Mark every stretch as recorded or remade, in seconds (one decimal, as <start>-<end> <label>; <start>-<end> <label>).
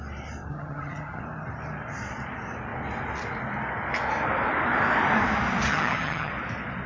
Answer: 0.0-0.5 recorded; 0.5-1.2 remade; 1.2-5.7 recorded; 5.7-6.3 remade; 6.3-6.9 recorded